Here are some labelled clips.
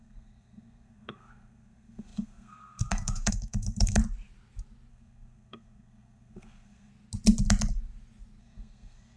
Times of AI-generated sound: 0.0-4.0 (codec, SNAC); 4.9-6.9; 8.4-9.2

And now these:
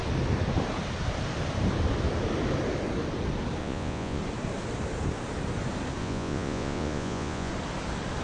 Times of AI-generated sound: 3.6-4.2 (vocoder, Vocos); 6.0-7.5

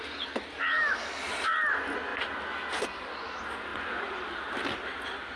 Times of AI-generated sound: none